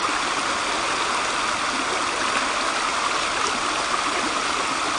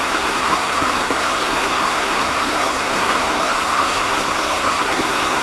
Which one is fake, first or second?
second